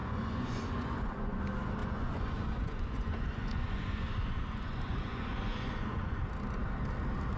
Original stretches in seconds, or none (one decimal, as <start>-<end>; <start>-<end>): 1.4-1.8; 6.2-7.4